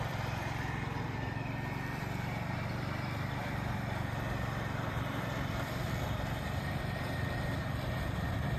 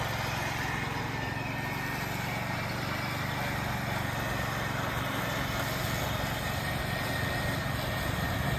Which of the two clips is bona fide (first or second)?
second